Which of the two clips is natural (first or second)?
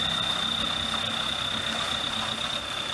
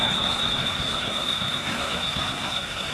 first